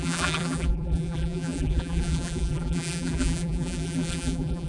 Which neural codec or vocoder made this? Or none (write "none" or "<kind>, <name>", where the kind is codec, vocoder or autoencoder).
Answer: vocoder, BigVGAN v2